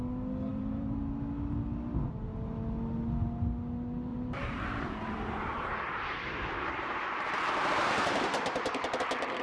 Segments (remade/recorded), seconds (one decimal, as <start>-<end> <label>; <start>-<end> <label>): 0.0-0.5 recorded; 0.5-1.0 remade; 1.0-4.1 recorded; 4.1-9.0 remade; 9.0-9.4 recorded